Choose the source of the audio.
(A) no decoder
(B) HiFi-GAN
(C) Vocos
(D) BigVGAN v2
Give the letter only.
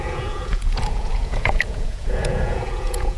C